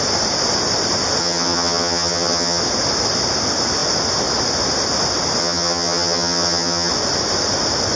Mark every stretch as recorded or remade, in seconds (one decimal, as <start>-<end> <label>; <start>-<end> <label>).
0.0-1.2 recorded; 1.2-2.6 remade; 2.6-5.4 recorded; 5.4-6.9 remade; 6.9-8.0 recorded